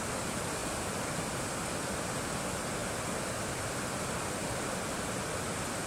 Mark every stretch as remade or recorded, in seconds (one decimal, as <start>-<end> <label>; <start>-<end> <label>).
0.0-0.6 recorded; 0.6-1.2 remade; 1.2-2.8 recorded; 2.8-4.0 remade; 4.0-5.9 recorded